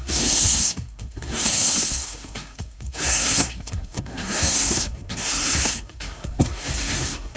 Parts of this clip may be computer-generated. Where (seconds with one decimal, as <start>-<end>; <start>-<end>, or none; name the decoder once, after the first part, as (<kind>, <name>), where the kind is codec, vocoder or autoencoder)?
0.0-7.4 (codec, SNAC)

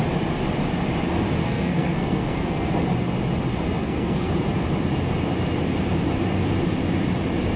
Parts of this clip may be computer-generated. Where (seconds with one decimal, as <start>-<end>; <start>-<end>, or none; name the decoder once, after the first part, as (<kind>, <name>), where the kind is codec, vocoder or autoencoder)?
1.4-2.7 (codec, SNAC); 3.8-4.3